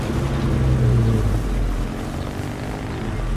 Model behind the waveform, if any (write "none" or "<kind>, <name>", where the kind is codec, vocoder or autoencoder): none